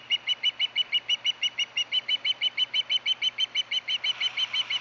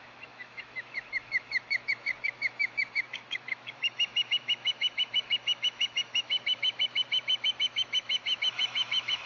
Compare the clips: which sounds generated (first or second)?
second